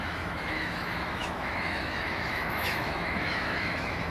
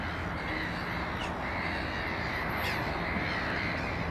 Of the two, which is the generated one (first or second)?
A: first